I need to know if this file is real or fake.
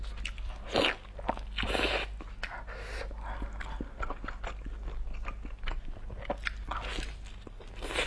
real